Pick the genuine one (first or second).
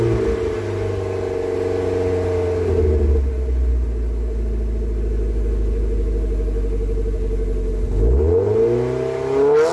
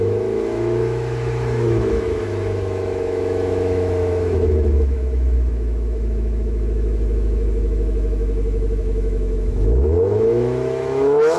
first